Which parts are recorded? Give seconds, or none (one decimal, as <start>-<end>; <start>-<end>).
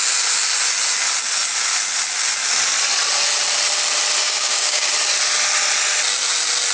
0.0-4.2; 4.9-6.7